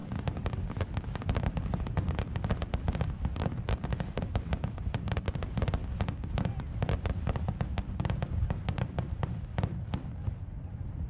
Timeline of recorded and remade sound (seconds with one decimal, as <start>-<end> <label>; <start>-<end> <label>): 0.0-0.9 recorded; 0.9-11.1 remade